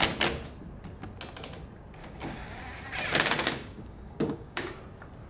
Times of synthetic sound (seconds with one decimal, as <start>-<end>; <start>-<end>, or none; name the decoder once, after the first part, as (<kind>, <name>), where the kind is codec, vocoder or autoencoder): 2.0-2.6 (codec, DAC); 3.4-4.8